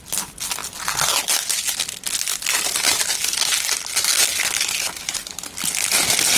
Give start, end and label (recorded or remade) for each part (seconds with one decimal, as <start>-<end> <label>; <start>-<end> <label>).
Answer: 0.0-4.2 recorded; 4.2-4.9 remade; 4.9-6.4 recorded